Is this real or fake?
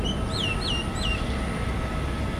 real